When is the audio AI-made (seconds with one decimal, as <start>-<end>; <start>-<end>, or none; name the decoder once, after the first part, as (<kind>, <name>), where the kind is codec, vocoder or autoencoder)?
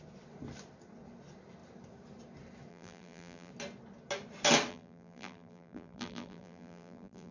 2.7-3.5 (vocoder, BigVGAN v2); 4.7-7.3